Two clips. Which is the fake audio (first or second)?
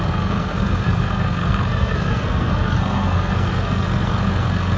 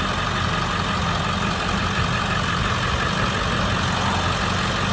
first